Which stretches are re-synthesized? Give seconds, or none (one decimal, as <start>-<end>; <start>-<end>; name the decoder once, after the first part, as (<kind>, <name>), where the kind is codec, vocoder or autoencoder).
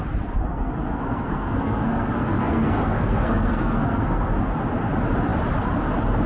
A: 0.5-4.3 (codec, SNAC)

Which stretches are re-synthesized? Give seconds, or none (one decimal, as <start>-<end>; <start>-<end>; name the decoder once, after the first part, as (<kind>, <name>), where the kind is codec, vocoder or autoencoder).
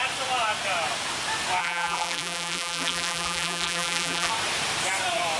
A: 1.6-4.3 (vocoder, BigVGAN v2)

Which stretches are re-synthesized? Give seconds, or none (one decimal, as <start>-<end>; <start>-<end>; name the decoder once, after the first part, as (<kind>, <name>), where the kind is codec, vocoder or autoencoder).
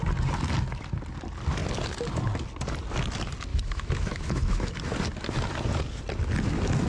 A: 3.5-4.7 (autoencoder, DAC-VAE)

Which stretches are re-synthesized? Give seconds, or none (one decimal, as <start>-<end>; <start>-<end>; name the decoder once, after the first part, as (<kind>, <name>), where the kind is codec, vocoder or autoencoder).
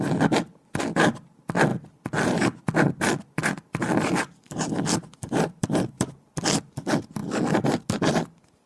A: 1.7-2.6 (vocoder, BigVGAN v2); 3.4-6.3; 7.2-7.8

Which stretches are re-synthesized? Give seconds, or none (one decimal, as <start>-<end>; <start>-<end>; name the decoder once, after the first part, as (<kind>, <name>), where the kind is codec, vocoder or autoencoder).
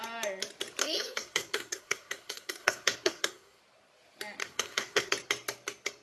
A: 0.8-3.6 (codec, SNAC); 4.4-5.1